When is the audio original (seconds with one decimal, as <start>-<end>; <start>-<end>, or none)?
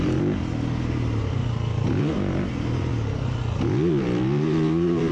1.4-2.0; 2.9-4.0